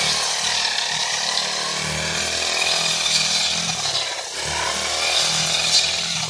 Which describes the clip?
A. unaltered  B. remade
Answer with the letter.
A